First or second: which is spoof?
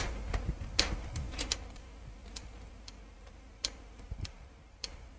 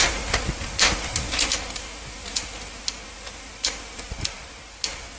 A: first